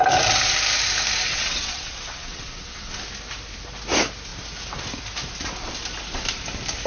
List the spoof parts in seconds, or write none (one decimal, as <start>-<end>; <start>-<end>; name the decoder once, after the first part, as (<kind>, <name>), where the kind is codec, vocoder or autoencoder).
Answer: 1.3-2.9 (vocoder, WaveNeXt)

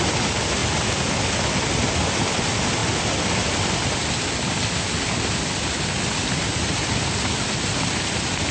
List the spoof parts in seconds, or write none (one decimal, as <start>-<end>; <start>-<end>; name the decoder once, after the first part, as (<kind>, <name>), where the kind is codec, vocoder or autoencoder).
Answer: none

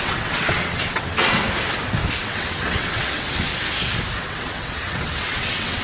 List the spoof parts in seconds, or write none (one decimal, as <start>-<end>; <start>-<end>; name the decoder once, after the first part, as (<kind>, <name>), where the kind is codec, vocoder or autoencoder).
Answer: 0.0-1.4 (vocoder, WaveNeXt); 2.2-3.5; 4.2-5.8

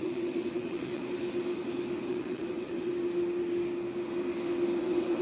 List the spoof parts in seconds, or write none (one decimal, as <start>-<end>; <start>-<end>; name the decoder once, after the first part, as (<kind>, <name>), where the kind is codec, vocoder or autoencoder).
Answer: 0.0-1.0 (vocoder, WaveNeXt); 2.1-2.9; 4.8-5.2

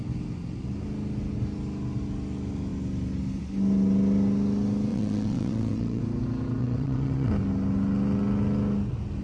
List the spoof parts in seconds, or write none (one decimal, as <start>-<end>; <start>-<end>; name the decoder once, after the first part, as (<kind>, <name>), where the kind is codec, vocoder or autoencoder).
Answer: 4.9-6.0 (vocoder, WaveNeXt); 6.6-7.3

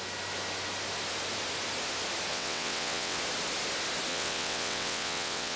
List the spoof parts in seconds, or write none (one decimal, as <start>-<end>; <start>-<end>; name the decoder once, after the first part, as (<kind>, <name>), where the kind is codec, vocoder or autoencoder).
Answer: 2.3-3.2 (vocoder, WaveNeXt); 4.1-5.6